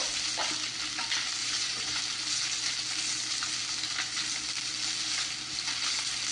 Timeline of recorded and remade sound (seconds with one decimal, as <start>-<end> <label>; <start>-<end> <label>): 0.0-1.4 recorded; 1.4-2.0 remade; 2.0-6.3 recorded